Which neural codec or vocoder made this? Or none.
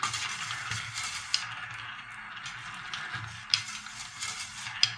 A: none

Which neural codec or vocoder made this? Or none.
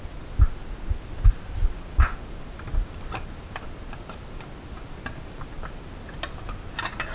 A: none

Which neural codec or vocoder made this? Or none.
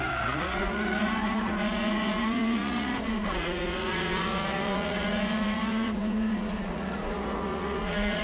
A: vocoder, Vocos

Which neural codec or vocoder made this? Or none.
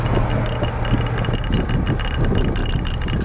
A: none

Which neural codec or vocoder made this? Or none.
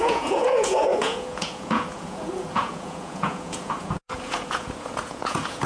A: vocoder, Vocos